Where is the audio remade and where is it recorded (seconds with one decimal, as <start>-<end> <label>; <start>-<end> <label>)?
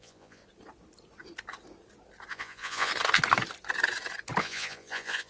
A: 0.0-0.4 remade; 0.4-2.3 recorded; 2.3-2.9 remade; 2.9-4.4 recorded; 4.4-5.3 remade